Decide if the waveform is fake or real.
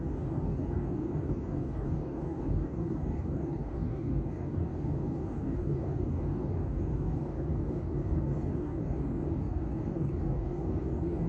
fake